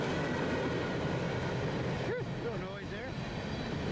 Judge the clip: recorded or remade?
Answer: recorded